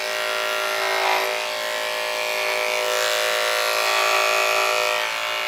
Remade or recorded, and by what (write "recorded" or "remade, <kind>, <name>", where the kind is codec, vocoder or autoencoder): recorded